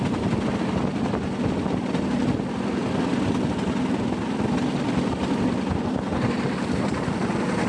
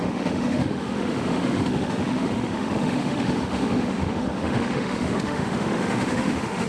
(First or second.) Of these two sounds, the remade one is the second